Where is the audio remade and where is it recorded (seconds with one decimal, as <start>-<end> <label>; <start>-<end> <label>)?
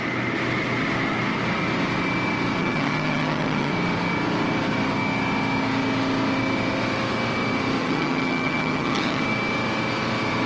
0.0-2.6 recorded; 2.6-3.7 remade; 3.7-7.8 recorded; 7.8-9.2 remade; 9.2-10.5 recorded